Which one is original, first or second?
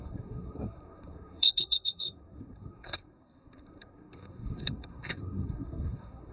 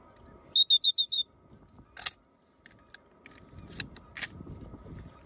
second